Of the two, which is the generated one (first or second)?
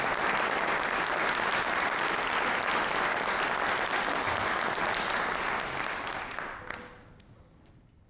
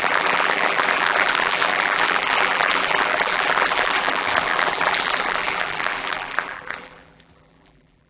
second